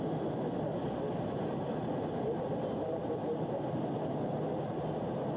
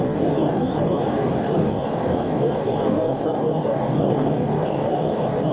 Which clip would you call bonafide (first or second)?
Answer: first